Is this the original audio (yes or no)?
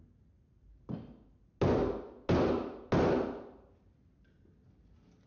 yes